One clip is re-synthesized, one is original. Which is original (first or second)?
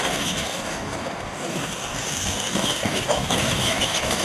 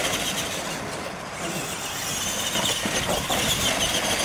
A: second